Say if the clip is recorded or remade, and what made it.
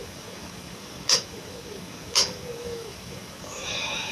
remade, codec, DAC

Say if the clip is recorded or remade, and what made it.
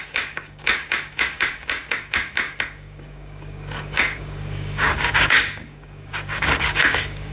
remade, codec, DAC